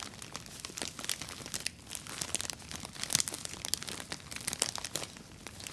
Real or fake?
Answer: real